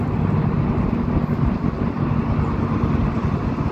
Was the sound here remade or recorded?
recorded